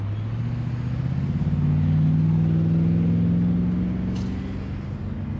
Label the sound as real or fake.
real